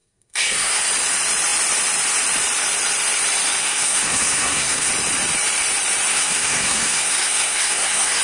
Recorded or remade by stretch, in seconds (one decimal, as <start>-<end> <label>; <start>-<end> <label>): 0.0-0.8 remade; 0.8-3.6 recorded; 3.6-4.9 remade; 4.9-6.1 recorded; 6.1-8.2 remade